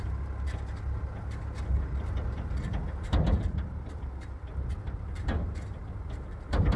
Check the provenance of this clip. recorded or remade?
recorded